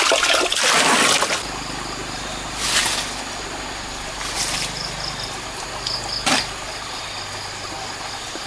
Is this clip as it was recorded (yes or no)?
yes